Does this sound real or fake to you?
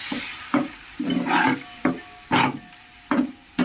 real